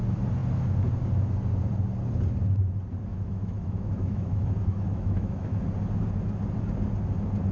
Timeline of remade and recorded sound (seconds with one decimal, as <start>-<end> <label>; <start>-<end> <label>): 0.0-3.1 recorded; 3.1-5.6 remade; 5.6-7.5 recorded